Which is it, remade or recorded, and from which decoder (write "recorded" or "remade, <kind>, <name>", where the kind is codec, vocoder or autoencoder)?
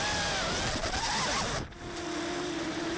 recorded